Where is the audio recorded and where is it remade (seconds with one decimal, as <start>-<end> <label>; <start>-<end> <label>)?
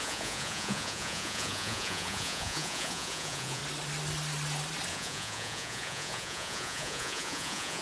0.0-3.6 remade; 3.6-4.9 recorded; 4.9-7.8 remade